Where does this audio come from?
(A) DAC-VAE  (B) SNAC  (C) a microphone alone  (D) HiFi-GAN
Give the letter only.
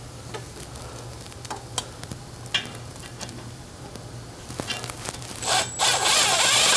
C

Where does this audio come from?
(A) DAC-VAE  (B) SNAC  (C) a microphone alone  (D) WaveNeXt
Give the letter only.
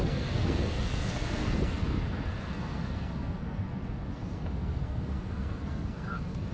B